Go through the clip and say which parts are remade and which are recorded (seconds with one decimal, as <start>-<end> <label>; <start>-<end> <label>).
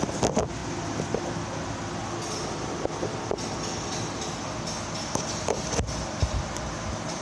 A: 0.0-7.2 recorded